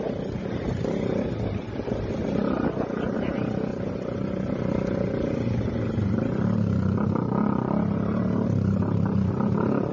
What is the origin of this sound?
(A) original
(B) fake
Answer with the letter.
A